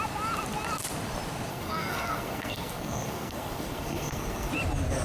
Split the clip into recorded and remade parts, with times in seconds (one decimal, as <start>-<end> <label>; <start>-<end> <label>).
0.0-1.5 recorded; 1.5-4.5 remade; 4.5-5.0 recorded